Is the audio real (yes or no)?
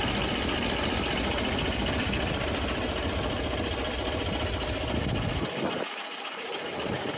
yes